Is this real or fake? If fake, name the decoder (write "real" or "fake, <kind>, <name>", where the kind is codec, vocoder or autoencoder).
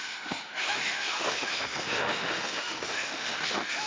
fake, autoencoder, DAC-VAE